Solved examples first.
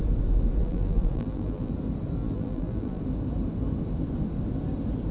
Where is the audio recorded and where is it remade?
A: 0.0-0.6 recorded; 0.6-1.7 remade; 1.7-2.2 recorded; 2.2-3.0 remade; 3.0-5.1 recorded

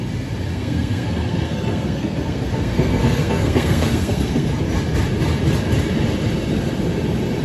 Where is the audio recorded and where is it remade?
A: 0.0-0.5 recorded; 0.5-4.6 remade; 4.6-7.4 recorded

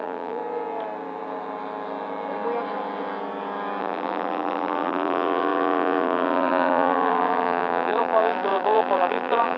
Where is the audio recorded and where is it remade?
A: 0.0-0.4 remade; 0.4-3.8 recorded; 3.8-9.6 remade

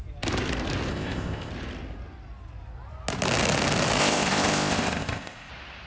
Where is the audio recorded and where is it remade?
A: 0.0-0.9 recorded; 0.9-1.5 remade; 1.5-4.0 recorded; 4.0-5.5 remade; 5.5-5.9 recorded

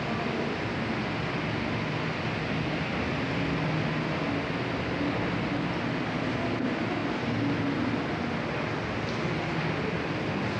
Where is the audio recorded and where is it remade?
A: 0.0-10.6 recorded

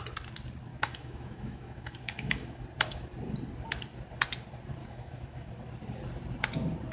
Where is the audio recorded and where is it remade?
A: 0.0-0.7 recorded; 0.7-2.6 remade; 2.6-4.8 recorded; 4.8-5.5 remade; 5.5-6.9 recorded